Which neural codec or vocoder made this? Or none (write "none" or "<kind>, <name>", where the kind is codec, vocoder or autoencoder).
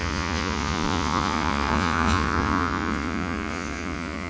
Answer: vocoder, Vocos